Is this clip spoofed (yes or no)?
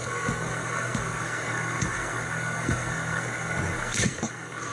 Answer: yes